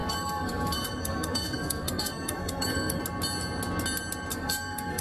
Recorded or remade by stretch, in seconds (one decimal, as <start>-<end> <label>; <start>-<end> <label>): 0.0-3.0 remade; 3.0-4.3 recorded; 4.3-5.0 remade

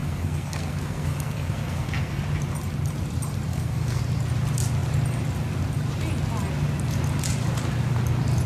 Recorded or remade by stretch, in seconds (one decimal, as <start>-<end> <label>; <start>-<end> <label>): 0.0-2.2 remade; 2.2-3.5 recorded; 3.5-4.0 remade; 4.0-8.5 recorded

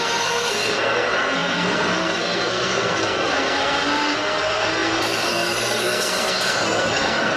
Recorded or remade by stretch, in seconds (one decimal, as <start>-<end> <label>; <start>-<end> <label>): 0.0-7.4 remade

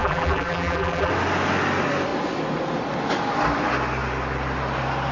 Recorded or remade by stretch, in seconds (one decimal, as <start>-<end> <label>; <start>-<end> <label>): 0.0-1.1 remade; 1.1-5.1 recorded

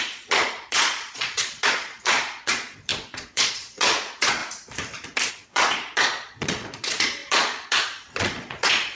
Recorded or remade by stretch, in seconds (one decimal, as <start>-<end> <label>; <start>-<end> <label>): 0.0-4.4 remade; 4.4-5.3 recorded; 5.3-9.0 remade

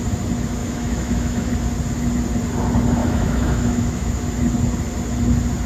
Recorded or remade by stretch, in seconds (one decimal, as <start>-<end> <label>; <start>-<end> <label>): 0.0-0.6 recorded; 0.6-1.5 remade; 1.5-3.0 recorded; 3.0-4.1 remade; 4.1-5.7 recorded

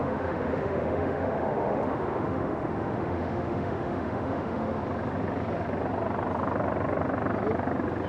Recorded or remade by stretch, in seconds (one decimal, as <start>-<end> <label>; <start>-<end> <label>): 0.0-4.8 remade; 4.8-8.1 recorded